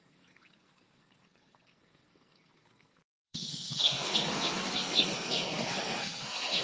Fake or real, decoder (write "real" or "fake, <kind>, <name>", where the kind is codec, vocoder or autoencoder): fake, codec, SNAC